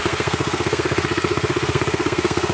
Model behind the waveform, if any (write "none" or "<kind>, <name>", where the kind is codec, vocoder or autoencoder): codec, SNAC